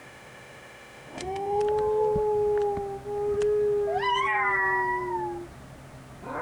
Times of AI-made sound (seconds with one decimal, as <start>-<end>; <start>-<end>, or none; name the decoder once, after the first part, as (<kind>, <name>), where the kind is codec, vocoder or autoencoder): 0.0-1.6 (autoencoder, DAC-VAE)